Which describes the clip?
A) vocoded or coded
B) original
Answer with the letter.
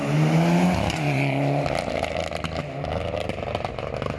B